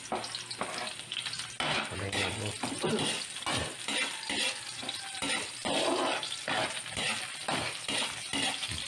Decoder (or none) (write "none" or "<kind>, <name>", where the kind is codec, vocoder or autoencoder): none